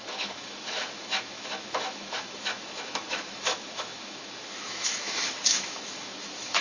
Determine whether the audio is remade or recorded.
remade